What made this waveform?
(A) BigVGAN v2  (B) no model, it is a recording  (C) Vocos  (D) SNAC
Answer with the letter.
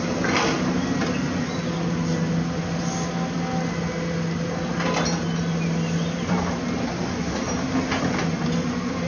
B